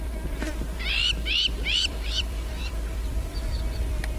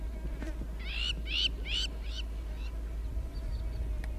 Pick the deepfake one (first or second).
first